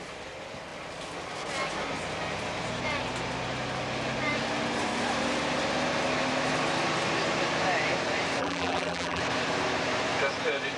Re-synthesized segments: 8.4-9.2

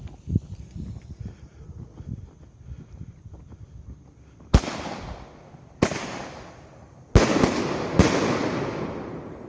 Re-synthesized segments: none